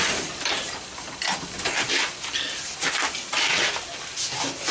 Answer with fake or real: real